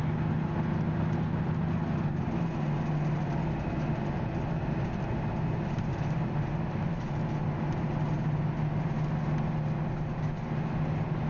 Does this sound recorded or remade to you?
recorded